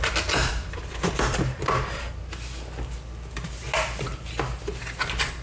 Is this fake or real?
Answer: real